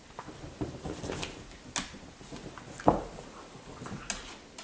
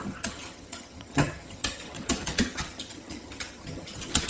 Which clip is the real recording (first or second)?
first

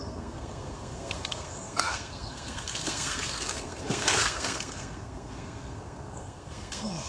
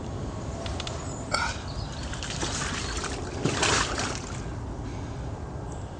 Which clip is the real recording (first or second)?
second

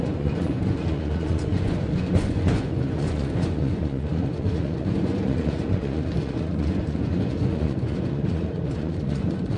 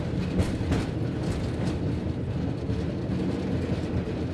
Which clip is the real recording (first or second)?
second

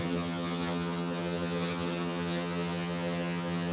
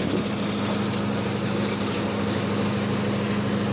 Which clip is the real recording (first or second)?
second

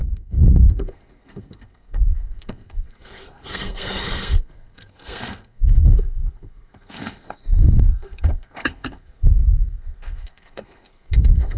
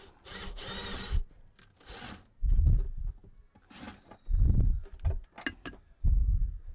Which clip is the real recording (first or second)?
second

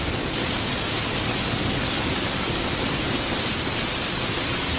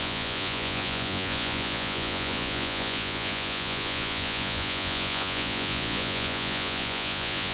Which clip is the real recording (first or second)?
first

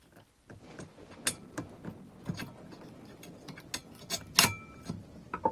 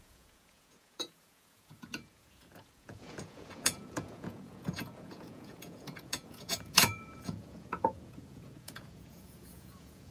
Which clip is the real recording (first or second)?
first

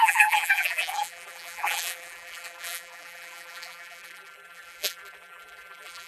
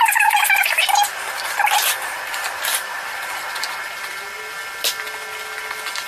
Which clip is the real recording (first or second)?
second